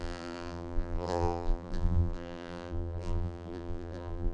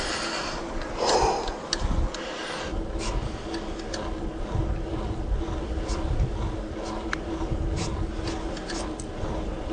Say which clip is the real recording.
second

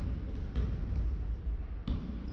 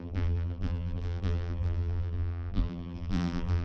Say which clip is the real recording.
first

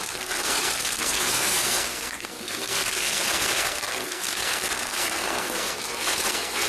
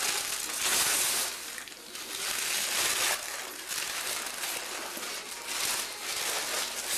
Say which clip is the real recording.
second